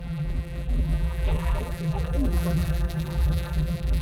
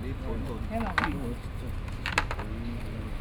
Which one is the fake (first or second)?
first